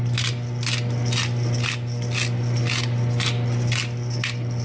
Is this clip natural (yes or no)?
yes